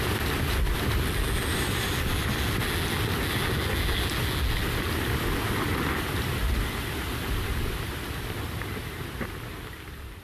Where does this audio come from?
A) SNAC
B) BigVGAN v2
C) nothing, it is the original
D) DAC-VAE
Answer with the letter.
C